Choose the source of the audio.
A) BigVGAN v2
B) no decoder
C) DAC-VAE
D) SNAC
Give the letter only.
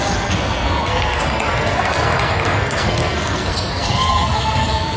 D